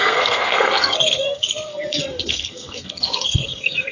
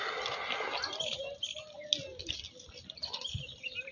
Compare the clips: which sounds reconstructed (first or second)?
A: first